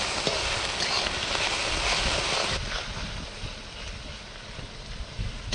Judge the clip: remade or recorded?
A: recorded